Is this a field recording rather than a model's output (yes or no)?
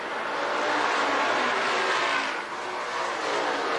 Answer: yes